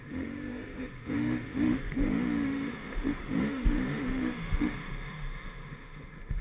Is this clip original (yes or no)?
no